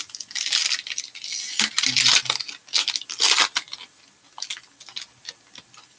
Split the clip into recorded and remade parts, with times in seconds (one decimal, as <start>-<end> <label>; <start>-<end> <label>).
0.0-6.0 recorded